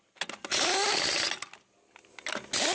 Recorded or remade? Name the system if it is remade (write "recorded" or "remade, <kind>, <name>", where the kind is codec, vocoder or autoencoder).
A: recorded